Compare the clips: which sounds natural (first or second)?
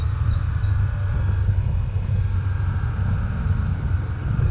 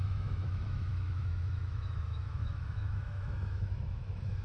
first